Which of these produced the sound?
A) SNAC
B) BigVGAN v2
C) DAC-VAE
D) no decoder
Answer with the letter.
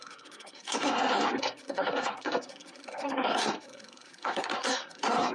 A